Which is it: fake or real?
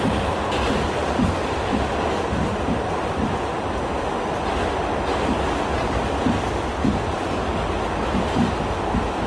real